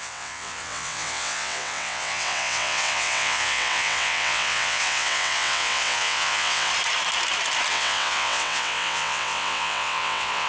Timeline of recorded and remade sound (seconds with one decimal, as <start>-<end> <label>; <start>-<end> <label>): 0.0-6.7 remade; 6.7-7.7 recorded; 7.7-10.5 remade